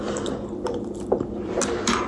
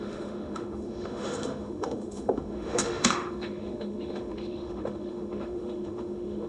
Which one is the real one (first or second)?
first